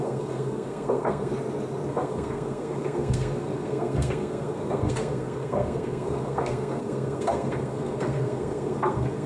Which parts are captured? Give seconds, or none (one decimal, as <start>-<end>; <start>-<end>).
1.3-1.9